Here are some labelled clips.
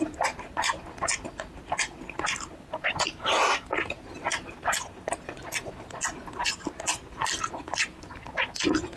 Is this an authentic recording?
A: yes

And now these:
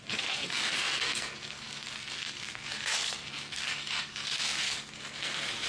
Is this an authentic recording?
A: no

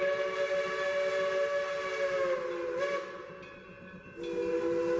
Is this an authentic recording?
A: yes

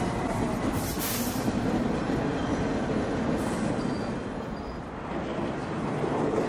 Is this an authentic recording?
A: yes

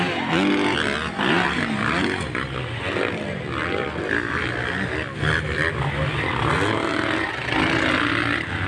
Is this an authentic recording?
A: yes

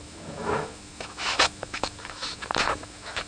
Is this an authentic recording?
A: no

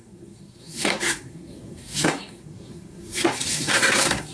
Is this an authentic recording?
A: no